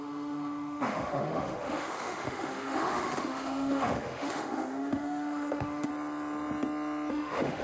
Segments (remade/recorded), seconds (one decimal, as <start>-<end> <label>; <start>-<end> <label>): 0.0-5.9 remade; 5.9-7.1 recorded; 7.1-7.6 remade